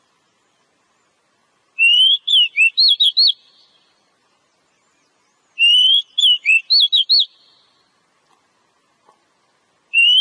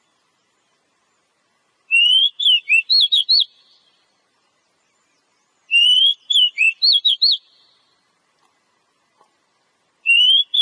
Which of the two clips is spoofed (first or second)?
second